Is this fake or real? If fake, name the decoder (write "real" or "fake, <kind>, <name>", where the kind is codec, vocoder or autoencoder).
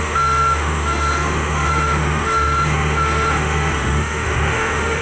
fake, autoencoder, DAC-VAE